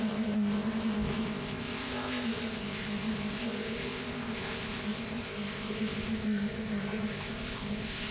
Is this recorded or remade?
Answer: remade